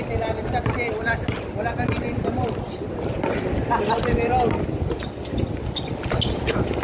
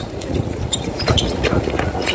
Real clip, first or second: first